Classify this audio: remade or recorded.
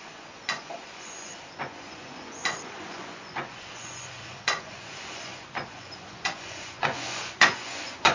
remade